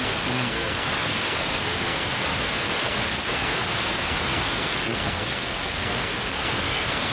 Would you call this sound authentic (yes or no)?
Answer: no